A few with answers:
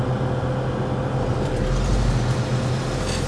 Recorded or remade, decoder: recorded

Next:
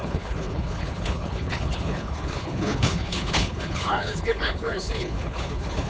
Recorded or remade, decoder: remade, codec, HILCodec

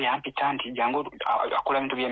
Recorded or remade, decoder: recorded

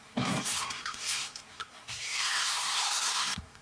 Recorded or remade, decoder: remade, codec, SNAC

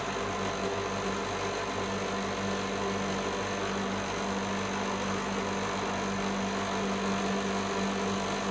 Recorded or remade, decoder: recorded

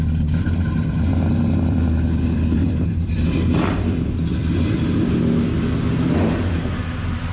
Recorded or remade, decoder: remade, vocoder, BigVGAN v2